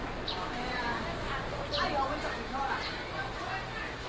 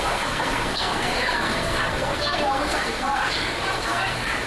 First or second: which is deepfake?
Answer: second